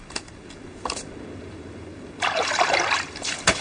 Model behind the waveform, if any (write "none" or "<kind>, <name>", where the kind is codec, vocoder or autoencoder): none